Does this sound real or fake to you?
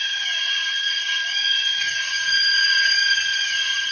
fake